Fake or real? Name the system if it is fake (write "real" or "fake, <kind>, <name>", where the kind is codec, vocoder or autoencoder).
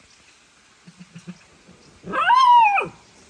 real